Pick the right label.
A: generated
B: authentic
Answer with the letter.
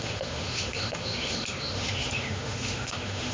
A